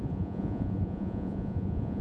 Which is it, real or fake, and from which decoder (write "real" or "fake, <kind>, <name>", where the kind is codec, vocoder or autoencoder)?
fake, vocoder, Vocos